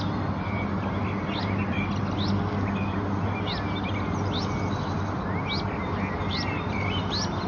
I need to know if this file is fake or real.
real